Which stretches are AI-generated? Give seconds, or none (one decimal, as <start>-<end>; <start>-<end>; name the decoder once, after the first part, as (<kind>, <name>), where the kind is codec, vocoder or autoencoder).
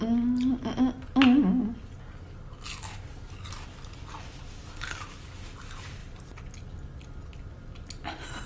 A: none